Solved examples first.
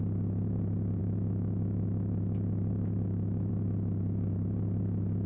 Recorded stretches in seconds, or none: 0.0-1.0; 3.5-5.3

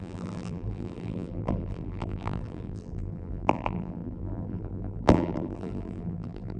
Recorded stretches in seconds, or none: none